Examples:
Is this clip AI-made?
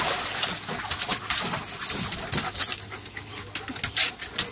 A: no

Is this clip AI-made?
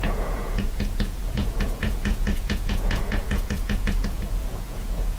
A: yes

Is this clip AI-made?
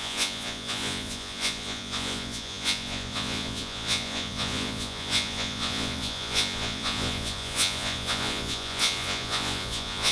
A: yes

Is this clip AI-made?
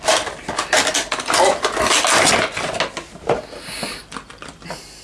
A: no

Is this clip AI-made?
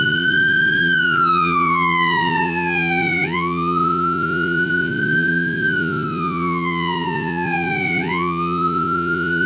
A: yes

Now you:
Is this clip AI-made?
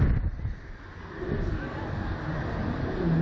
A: no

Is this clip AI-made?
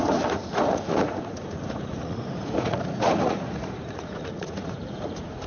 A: yes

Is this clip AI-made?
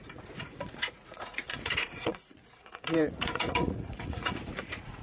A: yes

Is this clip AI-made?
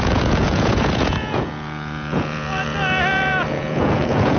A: yes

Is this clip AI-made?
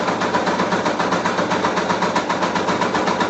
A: no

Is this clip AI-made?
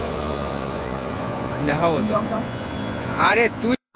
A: yes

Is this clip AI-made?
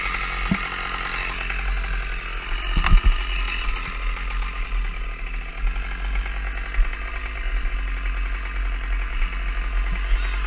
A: no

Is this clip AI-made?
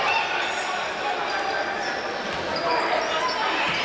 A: no